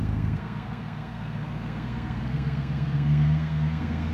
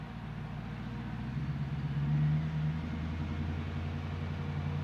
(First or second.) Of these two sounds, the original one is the second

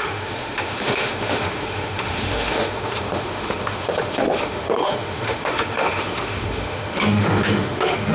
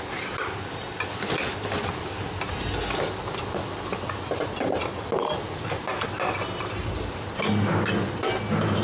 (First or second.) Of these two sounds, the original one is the second